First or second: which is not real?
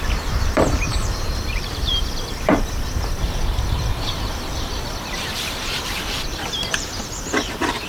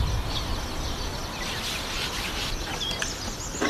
first